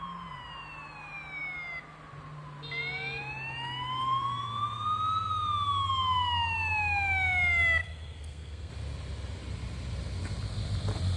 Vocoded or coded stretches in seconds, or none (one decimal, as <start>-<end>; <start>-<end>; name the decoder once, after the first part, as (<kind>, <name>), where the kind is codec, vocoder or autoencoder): 7.8-8.7 (codec, SNAC)

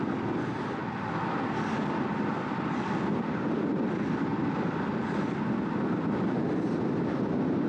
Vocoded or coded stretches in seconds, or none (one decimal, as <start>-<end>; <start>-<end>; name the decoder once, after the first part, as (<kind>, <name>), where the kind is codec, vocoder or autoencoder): none

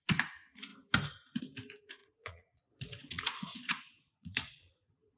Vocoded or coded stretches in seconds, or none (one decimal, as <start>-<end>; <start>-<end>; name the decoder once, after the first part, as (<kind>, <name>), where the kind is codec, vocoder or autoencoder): 2.0-5.2 (vocoder, Vocos)